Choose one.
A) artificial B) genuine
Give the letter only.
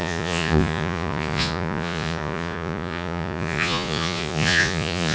A